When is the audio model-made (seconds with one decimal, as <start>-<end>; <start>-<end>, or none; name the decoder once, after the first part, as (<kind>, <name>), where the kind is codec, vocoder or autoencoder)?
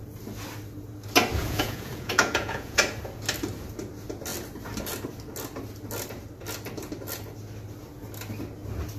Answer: 1.4-2.8 (vocoder, Vocos)